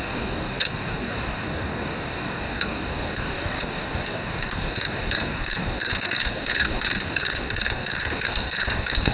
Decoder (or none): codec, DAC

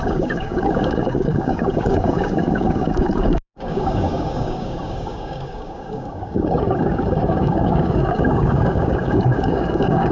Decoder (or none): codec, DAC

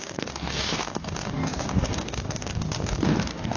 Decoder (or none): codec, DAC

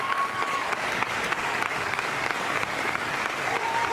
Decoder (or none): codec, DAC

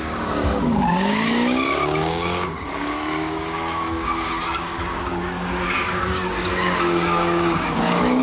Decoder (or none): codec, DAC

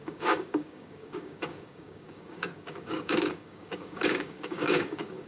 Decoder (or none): codec, DAC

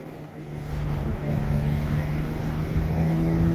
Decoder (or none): codec, DAC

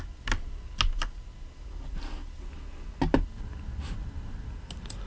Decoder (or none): none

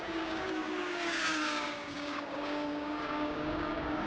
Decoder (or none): codec, DAC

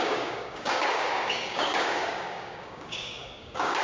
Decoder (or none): codec, DAC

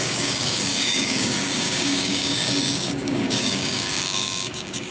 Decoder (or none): codec, DAC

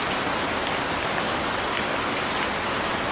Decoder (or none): none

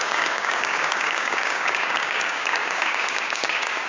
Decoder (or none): codec, DAC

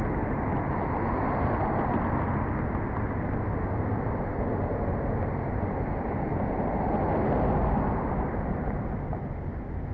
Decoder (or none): none